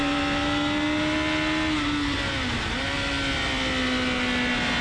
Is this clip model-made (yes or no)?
no